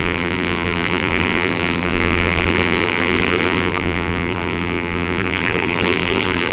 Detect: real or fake fake